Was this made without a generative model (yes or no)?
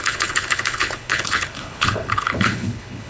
no